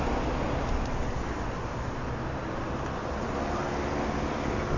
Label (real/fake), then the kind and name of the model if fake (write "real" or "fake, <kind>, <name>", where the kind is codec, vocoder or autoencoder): real